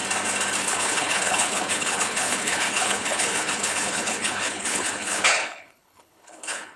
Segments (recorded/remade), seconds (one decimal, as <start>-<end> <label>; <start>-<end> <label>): 0.0-0.6 recorded; 0.6-6.8 remade